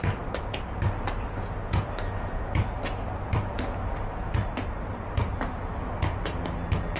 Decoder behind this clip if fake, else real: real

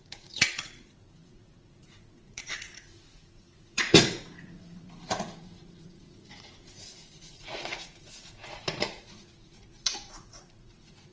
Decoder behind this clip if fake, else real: fake, vocoder, Vocos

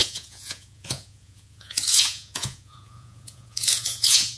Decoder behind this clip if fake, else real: fake, vocoder, Vocos